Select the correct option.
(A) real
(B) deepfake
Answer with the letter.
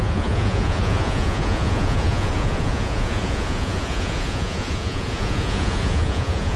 B